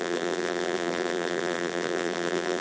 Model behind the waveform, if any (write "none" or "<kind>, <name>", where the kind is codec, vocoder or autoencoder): vocoder, BigVGAN v2